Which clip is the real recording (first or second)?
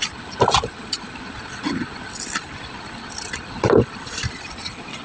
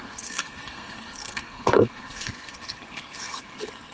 first